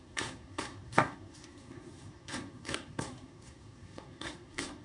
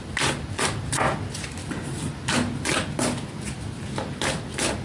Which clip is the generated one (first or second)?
first